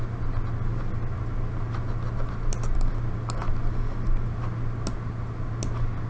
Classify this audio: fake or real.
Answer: real